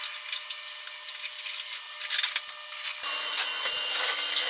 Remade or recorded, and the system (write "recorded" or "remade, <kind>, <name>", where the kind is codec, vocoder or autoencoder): recorded